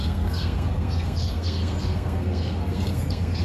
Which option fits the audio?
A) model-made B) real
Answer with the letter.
A